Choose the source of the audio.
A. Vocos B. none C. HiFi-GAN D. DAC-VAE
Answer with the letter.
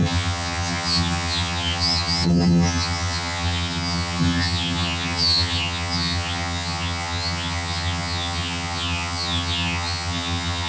C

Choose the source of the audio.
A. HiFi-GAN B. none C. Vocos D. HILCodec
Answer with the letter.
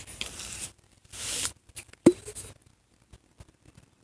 B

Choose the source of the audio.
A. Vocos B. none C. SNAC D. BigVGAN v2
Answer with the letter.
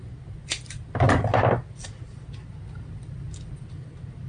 B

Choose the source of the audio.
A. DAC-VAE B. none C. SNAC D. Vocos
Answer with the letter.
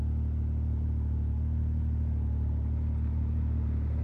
B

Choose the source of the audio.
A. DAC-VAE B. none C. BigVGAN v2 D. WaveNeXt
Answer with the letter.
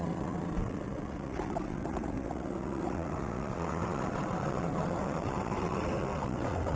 D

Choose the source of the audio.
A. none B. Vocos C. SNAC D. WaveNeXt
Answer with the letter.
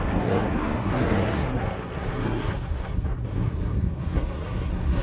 C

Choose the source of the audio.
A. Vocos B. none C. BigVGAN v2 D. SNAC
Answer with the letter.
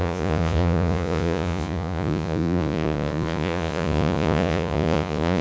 A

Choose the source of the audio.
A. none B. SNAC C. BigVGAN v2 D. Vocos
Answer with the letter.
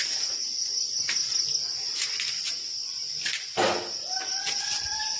A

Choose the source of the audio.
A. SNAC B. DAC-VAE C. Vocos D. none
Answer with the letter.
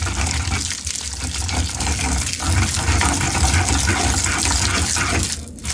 D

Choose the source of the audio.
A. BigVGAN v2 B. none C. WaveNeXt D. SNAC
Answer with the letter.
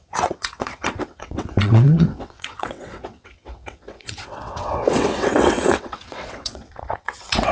C